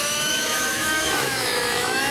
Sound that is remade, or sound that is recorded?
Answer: remade